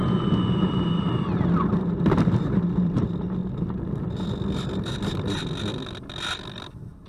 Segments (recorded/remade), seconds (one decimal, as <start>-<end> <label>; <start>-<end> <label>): 0.0-7.1 recorded